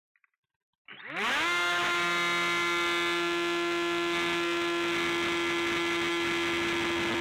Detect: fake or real real